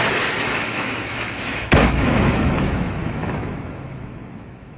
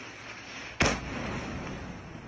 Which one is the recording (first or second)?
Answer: second